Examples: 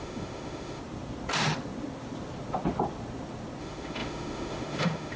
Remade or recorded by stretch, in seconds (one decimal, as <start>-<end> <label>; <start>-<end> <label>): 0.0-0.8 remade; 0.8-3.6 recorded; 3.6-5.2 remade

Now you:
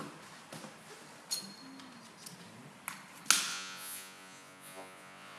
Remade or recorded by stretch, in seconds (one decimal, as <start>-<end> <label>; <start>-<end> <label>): 0.0-3.5 recorded; 3.5-5.4 remade

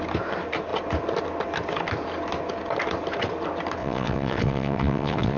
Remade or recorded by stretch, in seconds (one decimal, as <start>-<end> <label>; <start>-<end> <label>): 0.0-3.8 recorded; 3.8-5.4 remade

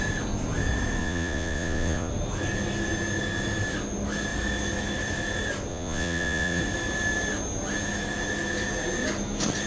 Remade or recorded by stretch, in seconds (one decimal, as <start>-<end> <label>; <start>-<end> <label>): 0.0-1.0 recorded; 1.0-2.1 remade; 2.1-5.7 recorded; 5.7-6.6 remade; 6.6-9.7 recorded

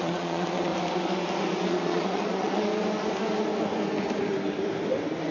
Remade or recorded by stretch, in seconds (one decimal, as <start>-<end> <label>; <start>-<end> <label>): 0.0-0.7 remade; 0.7-1.7 recorded; 1.7-2.7 remade; 2.7-5.3 recorded

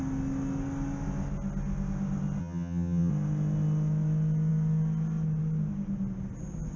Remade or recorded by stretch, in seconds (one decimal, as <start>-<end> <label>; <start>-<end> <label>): 0.0-2.4 recorded; 2.4-3.1 remade; 3.1-6.8 recorded

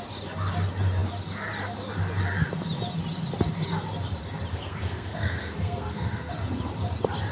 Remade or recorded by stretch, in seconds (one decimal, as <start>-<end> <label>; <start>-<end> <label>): 0.0-4.5 recorded; 4.5-6.3 remade; 6.3-7.3 recorded